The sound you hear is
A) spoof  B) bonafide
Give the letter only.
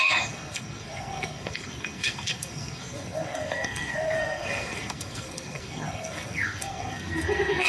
A